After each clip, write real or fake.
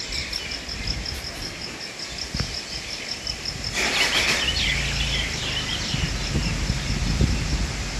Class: real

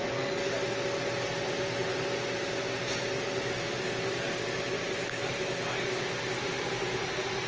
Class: real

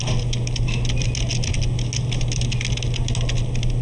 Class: real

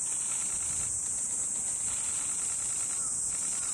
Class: real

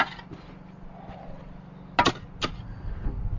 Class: real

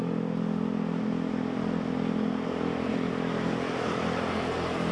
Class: real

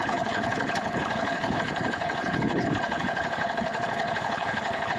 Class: fake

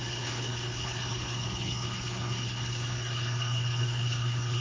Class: fake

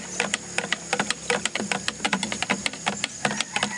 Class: real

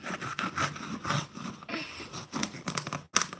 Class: real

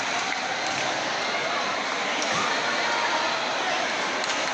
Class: real